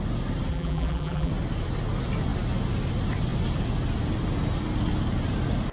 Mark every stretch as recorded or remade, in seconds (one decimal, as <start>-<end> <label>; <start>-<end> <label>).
0.0-0.5 recorded; 0.5-1.3 remade; 1.3-5.7 recorded